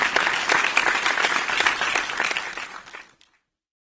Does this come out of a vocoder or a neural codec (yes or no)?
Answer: no